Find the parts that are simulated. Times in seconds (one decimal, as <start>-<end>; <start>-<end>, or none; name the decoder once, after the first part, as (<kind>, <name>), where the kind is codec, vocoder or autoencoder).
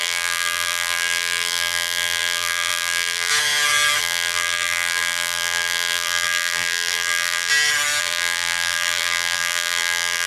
0.0-3.3 (vocoder, BigVGAN v2); 4.0-7.5; 8.0-10.3